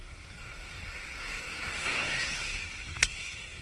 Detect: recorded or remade remade